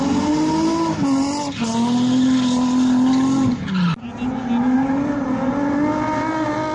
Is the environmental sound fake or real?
real